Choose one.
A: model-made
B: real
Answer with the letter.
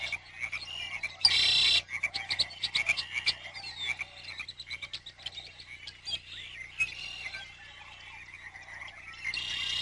B